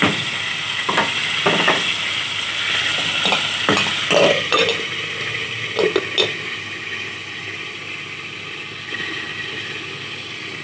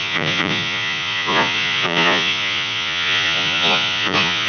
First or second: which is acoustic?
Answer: first